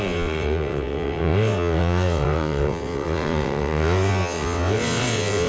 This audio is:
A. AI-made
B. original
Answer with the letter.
A